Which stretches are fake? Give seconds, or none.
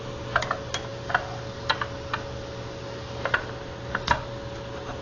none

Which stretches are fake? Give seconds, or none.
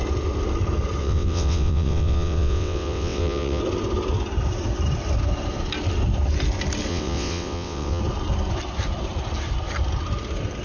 1.0-3.6 (vocoder, WaveNeXt); 6.9-8.0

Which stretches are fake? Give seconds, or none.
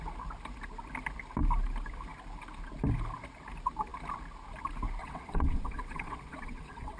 5.0-7.0 (vocoder, WaveNeXt)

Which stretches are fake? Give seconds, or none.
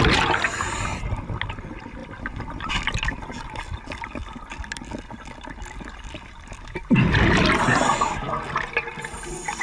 none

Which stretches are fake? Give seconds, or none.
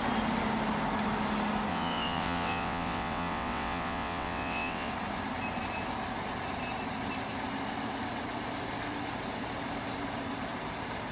1.7-4.9 (vocoder, WaveNeXt)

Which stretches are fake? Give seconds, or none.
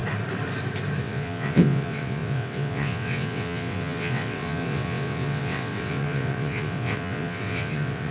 1.0-8.1 (vocoder, WaveNeXt)